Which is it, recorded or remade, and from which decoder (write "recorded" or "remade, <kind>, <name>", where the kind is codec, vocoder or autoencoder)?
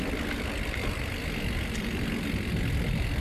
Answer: recorded